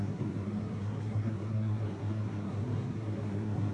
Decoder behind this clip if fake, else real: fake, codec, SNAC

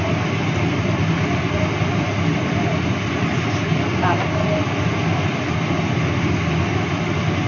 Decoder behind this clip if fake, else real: real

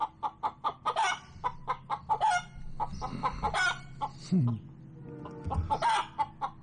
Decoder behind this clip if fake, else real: real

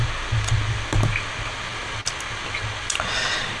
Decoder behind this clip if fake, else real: real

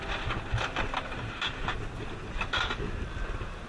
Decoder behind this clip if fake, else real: real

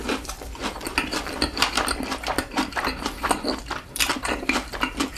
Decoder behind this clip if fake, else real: fake, vocoder, BigVGAN v2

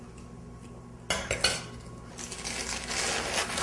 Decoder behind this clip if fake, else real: real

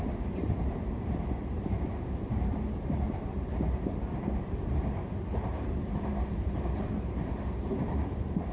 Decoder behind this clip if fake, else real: fake, vocoder, BigVGAN v2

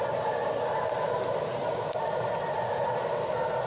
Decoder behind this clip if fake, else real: real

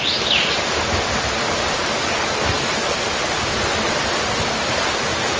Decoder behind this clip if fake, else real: real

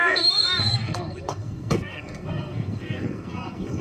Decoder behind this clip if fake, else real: fake, codec, SNAC